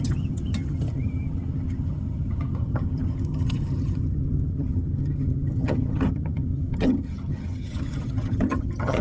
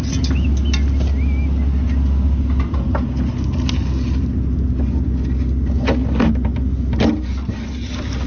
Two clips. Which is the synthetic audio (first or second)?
first